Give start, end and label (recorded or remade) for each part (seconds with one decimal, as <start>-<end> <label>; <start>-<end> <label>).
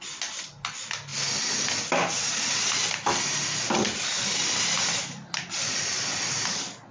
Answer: 0.0-6.9 recorded